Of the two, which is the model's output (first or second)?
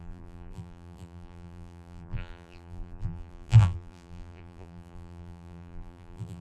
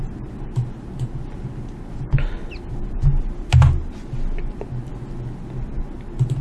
first